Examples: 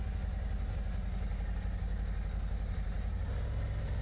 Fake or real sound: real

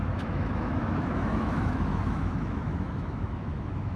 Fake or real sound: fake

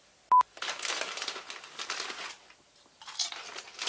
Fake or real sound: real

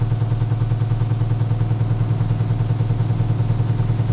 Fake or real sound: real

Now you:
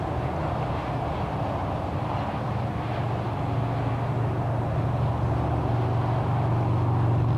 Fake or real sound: real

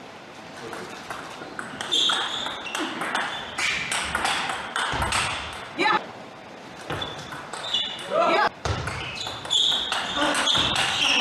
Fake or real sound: fake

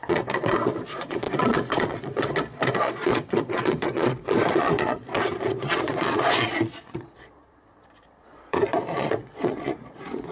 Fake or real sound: fake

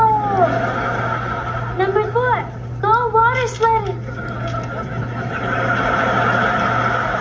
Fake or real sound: real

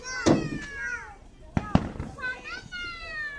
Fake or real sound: real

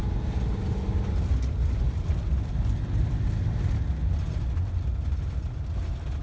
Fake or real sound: real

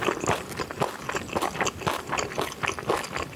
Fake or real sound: real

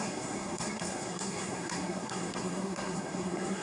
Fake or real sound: fake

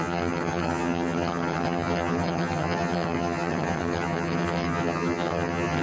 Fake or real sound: fake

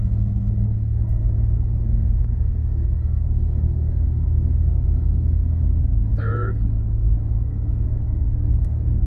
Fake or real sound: fake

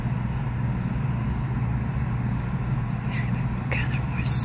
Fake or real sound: real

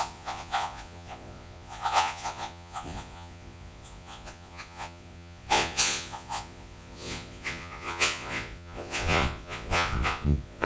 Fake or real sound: fake